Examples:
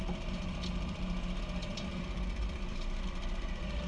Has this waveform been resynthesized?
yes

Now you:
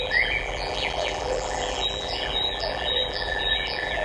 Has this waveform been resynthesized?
yes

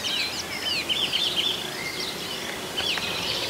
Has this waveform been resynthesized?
no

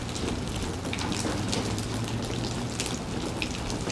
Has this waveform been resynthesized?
no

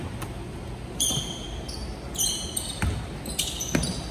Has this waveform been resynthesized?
no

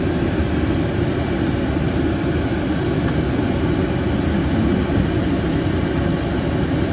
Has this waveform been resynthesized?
no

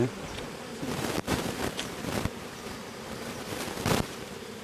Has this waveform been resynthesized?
yes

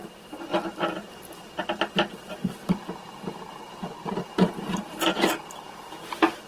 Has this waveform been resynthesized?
no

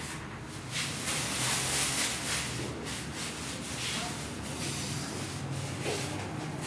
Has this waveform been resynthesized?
no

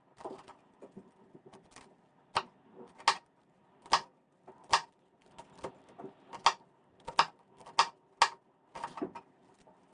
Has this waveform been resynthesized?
no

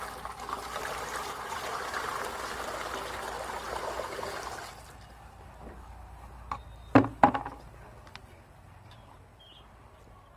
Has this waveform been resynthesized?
yes